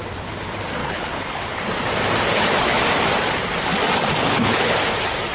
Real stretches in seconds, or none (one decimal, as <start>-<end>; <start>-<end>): 0.0-0.8; 1.6-2.3; 2.8-4.3; 4.8-5.3